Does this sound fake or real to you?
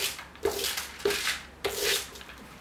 real